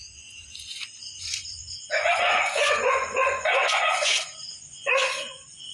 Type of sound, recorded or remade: remade